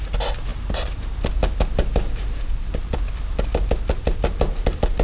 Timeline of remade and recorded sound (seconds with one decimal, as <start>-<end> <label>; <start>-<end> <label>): 0.0-0.5 recorded; 0.5-3.5 remade; 3.5-5.0 recorded